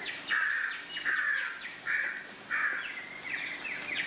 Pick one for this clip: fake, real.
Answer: real